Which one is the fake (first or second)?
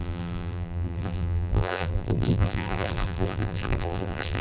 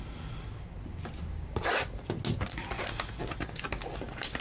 first